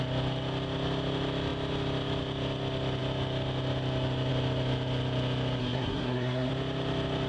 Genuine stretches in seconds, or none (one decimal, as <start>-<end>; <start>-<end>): 0.0-5.6; 6.5-7.3